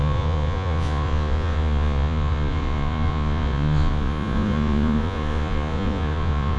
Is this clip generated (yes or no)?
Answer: yes